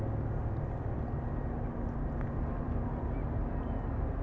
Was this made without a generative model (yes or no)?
yes